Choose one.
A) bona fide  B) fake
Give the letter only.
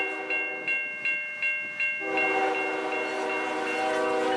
A